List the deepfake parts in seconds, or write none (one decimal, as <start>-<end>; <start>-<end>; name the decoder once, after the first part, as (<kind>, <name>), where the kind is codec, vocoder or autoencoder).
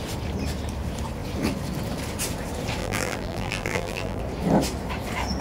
2.8-4.2 (vocoder, BigVGAN v2)